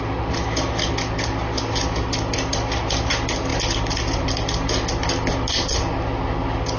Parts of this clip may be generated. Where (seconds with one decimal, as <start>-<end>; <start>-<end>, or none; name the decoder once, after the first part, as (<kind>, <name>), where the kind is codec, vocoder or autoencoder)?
none

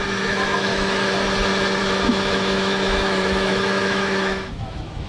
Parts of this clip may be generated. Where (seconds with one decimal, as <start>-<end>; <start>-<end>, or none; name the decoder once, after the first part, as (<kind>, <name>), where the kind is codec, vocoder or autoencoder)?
0.7-1.3 (autoencoder, DAC-VAE); 1.8-5.1